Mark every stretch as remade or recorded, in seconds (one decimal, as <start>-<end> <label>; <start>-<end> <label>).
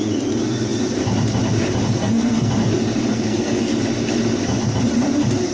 0.0-2.0 recorded; 2.0-2.5 remade; 2.5-3.1 recorded; 3.1-3.8 remade; 3.8-5.5 recorded